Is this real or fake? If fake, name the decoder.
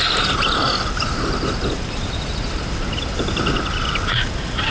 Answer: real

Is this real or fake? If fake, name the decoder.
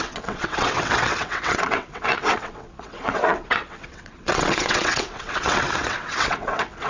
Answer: fake, vocoder, WaveNeXt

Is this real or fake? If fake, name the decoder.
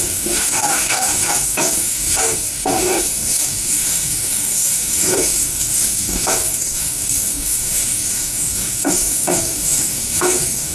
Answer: fake, codec, DAC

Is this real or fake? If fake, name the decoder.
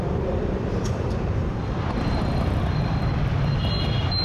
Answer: fake, vocoder, BigVGAN v2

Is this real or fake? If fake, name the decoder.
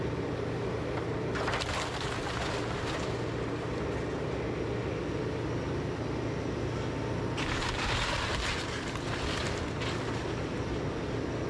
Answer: real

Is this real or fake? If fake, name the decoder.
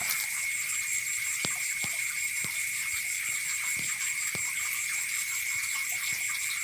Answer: fake, vocoder, BigVGAN v2